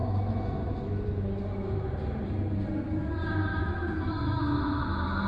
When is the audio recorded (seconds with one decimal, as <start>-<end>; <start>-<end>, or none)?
1.9-3.5; 4.4-5.3